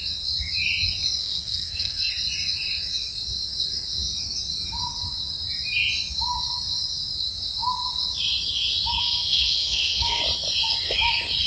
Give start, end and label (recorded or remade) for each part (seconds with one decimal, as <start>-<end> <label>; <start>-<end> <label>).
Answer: 0.0-1.2 recorded; 1.2-2.1 remade; 2.1-9.0 recorded; 9.0-10.2 remade; 10.2-11.5 recorded

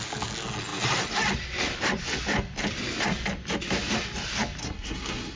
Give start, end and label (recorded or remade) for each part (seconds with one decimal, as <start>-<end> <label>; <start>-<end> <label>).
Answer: 0.0-4.6 recorded; 4.6-5.4 remade

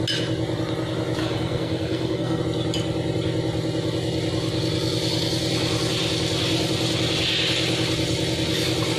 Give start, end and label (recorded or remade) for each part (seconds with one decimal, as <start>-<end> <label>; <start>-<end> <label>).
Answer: 0.0-1.2 recorded; 1.2-2.4 remade; 2.4-9.0 recorded

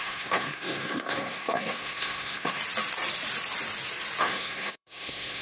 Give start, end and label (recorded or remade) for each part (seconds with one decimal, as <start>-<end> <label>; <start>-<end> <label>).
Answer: 0.0-2.6 remade; 2.6-4.2 recorded; 4.2-5.4 remade